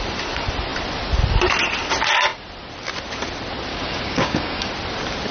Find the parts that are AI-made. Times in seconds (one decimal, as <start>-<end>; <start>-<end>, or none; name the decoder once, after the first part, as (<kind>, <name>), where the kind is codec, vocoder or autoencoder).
3.7-4.7 (codec, DAC)